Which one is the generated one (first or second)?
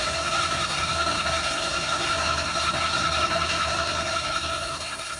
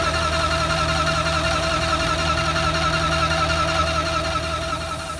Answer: first